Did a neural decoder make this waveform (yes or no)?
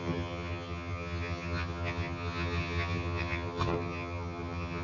yes